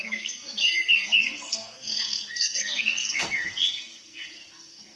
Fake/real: fake